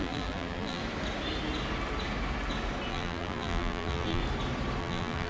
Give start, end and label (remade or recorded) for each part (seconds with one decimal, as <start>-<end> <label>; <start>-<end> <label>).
0.0-0.8 remade; 0.8-2.9 recorded; 2.9-4.2 remade; 4.2-4.8 recorded; 4.8-5.3 remade